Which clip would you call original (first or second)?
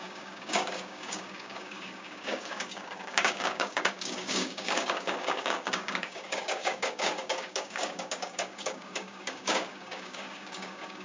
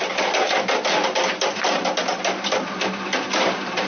second